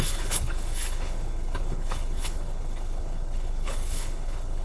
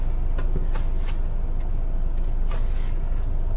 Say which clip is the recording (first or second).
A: second